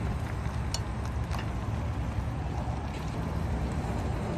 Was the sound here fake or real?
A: real